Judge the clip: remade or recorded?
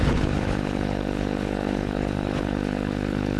remade